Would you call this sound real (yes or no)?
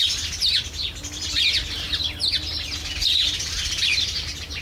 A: yes